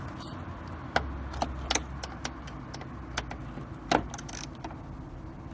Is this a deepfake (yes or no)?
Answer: no